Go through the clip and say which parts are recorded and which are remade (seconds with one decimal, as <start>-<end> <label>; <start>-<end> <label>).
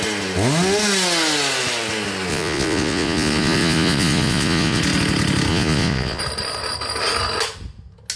0.0-2.3 recorded; 2.3-4.8 remade; 4.8-5.5 recorded; 5.5-6.2 remade; 6.2-8.2 recorded